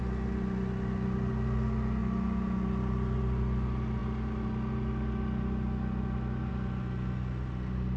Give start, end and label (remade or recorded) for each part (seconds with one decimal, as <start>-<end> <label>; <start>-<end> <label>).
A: 0.0-8.0 recorded